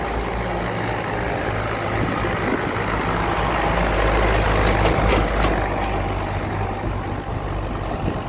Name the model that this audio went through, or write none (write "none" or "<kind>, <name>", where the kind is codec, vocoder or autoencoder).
none